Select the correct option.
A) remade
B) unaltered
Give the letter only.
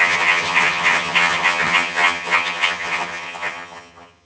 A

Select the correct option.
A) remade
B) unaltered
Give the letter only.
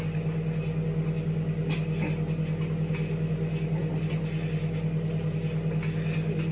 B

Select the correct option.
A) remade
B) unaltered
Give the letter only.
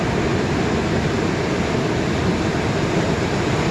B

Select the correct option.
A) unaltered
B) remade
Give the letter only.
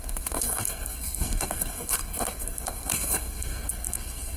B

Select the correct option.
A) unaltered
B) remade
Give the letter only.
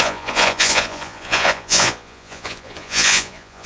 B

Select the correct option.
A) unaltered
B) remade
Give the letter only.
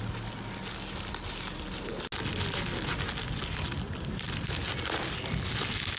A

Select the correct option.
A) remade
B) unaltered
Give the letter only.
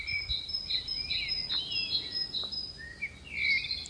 B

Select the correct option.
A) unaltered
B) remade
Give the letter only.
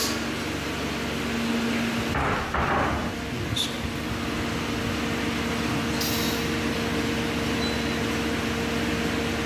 A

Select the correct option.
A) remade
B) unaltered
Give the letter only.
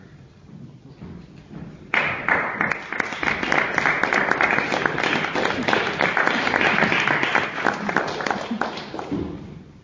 B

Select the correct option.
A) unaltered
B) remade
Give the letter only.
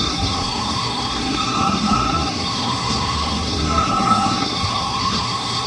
B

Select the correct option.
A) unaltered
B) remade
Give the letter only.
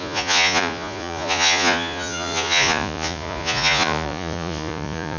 B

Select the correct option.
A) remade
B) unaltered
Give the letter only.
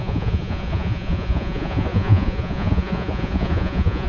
A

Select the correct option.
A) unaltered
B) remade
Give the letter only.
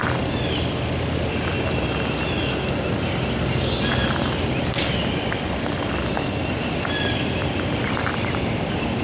A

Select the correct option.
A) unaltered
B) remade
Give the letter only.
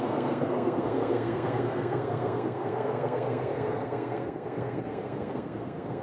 B